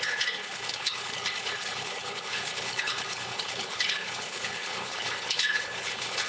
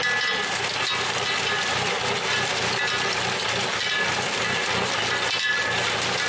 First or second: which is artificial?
first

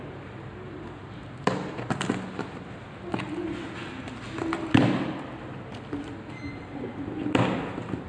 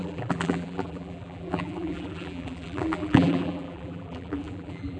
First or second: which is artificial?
second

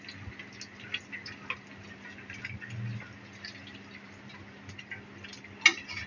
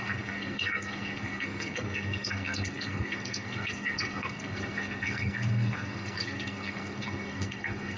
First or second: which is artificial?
second